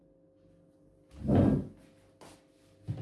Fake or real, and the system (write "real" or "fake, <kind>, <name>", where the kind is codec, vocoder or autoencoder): real